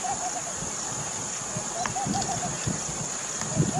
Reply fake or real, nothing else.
real